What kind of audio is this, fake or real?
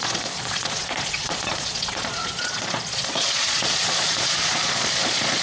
fake